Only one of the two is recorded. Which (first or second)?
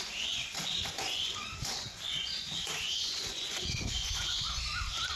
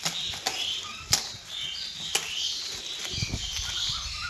second